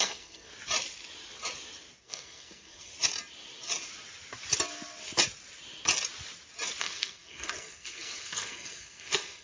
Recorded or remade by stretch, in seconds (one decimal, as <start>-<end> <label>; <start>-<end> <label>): 0.0-0.5 remade; 0.5-2.0 recorded; 2.0-2.9 remade; 2.9-6.8 recorded; 6.8-9.4 remade